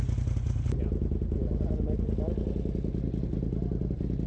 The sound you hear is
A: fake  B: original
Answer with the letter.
B